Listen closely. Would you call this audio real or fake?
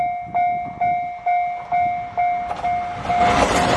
real